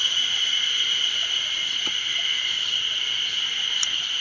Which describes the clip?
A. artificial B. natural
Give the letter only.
A